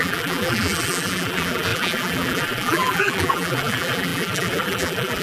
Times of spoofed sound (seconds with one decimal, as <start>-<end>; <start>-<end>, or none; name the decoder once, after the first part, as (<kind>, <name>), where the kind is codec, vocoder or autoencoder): 0.0-5.2 (vocoder, BigVGAN v2)